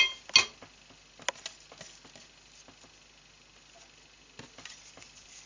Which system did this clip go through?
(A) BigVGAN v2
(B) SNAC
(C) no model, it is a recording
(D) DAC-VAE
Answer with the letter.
C